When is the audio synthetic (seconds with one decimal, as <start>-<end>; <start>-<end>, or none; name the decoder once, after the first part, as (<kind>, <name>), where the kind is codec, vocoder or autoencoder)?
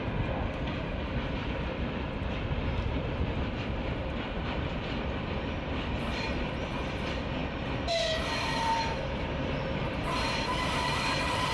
0.0-11.5 (vocoder, BigVGAN v2)